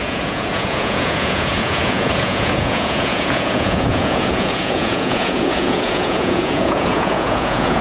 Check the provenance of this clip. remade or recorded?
remade